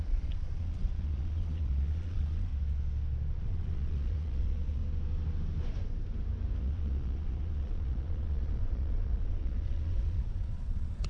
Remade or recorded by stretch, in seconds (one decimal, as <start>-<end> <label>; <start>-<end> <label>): 0.0-2.5 remade; 2.5-3.4 recorded; 3.4-4.8 remade; 4.8-6.6 recorded; 6.6-11.1 remade